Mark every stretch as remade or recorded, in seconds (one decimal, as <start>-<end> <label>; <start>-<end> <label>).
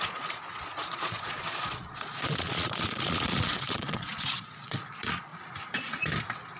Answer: 0.0-5.3 remade; 5.3-6.6 recorded